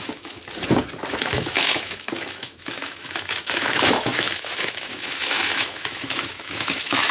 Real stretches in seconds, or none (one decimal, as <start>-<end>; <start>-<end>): 0.4-1.1